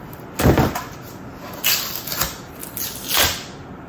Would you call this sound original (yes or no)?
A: yes